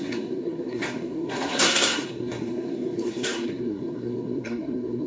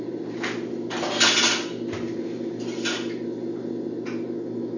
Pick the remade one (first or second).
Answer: first